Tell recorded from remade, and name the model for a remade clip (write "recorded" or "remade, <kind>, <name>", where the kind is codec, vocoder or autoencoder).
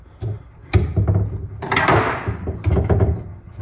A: recorded